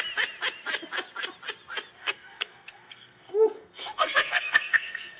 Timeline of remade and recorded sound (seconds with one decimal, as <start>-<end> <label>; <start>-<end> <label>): 0.0-2.0 recorded; 2.0-5.2 remade